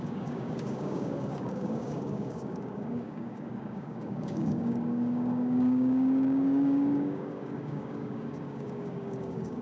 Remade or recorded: remade